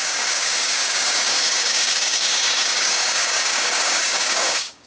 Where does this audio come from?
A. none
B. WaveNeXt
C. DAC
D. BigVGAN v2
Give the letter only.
C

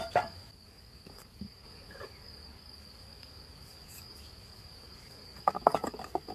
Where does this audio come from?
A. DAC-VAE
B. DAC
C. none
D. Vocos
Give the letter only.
B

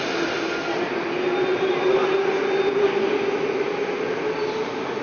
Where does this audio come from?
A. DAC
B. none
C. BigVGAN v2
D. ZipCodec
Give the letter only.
B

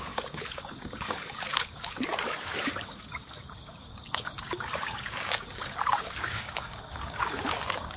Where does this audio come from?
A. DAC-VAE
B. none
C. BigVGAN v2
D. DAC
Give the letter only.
D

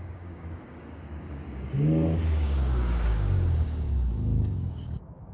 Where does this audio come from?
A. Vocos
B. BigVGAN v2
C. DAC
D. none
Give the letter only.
C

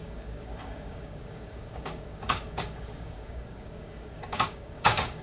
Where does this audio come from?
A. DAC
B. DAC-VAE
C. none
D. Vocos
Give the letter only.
A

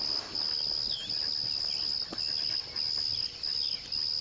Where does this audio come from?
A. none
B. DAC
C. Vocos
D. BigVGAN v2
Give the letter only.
A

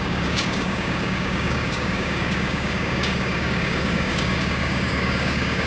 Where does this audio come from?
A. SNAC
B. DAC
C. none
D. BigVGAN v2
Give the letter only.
B